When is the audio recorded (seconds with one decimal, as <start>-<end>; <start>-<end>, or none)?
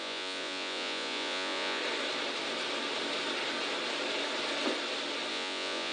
1.8-5.3